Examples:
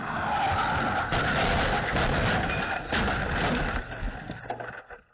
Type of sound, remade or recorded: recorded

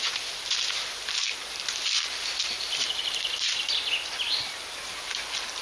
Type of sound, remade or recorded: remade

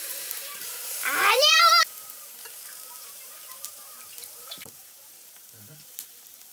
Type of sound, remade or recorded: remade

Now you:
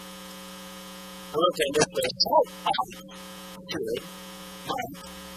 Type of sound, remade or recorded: remade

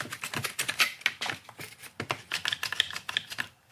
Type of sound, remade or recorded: recorded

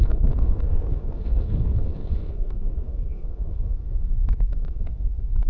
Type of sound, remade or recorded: remade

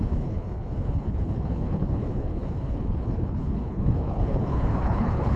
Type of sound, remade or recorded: remade